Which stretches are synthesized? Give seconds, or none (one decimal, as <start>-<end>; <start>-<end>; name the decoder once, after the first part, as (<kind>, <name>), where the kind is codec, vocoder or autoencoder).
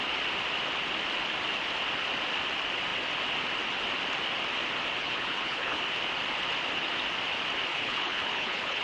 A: 5.0-5.8 (codec, HILCodec); 7.7-8.8